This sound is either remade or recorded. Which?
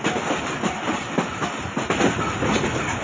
recorded